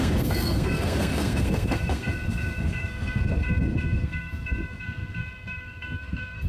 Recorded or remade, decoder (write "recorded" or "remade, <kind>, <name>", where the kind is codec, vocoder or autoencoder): remade, codec, SNAC